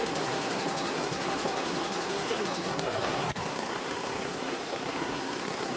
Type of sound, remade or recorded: remade